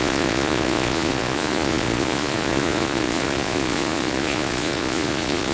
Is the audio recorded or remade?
remade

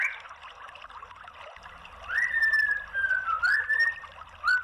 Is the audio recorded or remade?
recorded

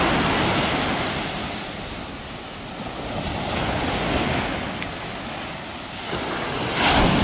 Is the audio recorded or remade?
recorded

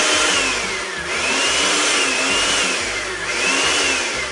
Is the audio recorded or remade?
recorded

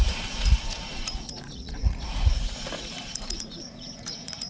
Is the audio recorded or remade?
remade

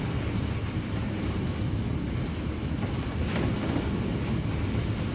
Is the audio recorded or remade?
recorded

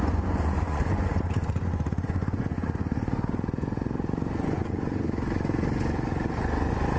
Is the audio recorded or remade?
remade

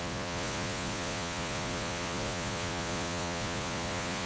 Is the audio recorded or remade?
remade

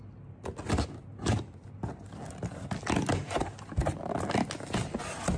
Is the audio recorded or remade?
recorded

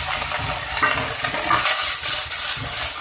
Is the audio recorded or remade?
recorded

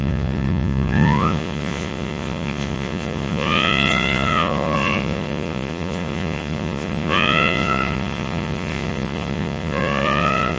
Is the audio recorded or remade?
remade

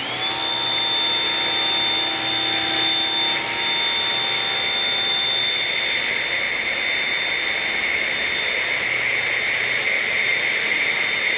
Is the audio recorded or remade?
recorded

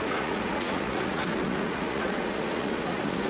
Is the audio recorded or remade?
remade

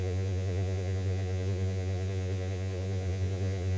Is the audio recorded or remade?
remade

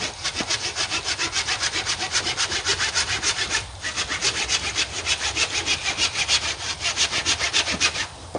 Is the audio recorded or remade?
recorded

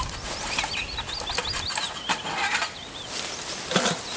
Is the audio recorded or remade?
recorded